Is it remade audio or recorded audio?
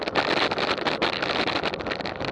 recorded